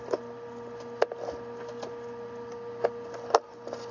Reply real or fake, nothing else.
real